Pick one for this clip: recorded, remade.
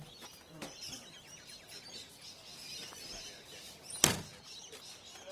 recorded